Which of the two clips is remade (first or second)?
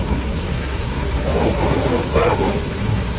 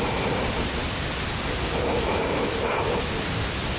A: first